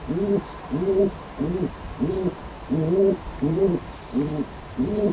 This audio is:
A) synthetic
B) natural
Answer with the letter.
A